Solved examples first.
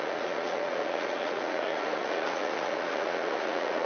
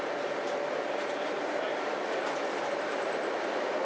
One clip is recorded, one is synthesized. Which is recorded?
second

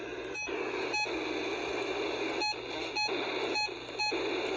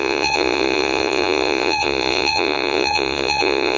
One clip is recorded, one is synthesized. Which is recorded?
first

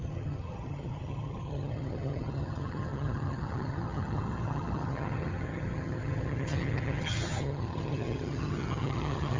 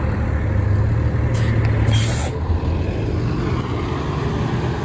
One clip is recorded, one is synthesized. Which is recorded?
second